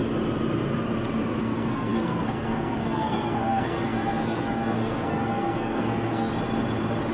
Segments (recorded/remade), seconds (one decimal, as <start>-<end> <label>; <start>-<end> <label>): 0.0-1.4 recorded; 1.4-6.3 remade; 6.3-7.1 recorded